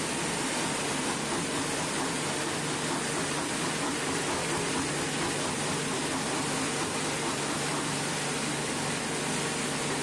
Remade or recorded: recorded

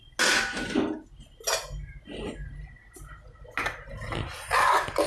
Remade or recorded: recorded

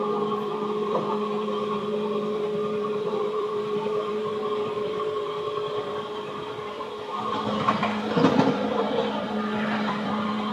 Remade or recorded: remade